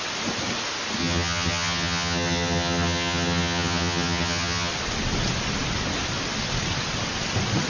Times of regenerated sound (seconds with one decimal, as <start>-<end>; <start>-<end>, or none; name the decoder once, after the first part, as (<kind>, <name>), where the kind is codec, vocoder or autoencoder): 1.0-4.7 (vocoder, HiFi-GAN)